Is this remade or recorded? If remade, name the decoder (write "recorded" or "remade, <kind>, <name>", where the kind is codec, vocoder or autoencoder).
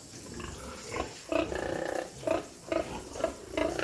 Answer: recorded